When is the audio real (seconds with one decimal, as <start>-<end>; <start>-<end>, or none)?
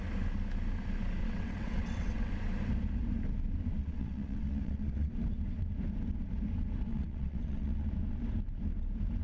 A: 0.0-1.2; 2.3-3.8; 5.1-6.9; 7.9-9.2